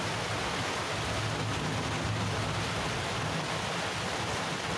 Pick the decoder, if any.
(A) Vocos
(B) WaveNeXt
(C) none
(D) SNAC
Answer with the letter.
C